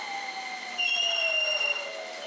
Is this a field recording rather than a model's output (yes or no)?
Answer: yes